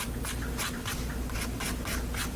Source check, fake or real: real